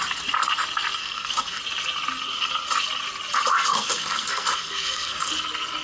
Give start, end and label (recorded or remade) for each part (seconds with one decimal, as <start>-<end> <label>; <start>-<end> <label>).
0.0-1.0 recorded; 1.0-1.6 remade; 1.6-3.7 recorded; 3.7-5.3 remade; 5.3-5.8 recorded